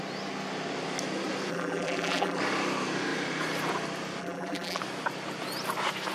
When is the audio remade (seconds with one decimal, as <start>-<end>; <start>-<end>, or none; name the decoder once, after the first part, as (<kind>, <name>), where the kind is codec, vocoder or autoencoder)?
1.5-2.4 (vocoder, BigVGAN v2); 4.2-4.8